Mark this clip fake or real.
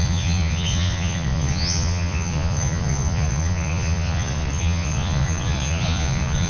fake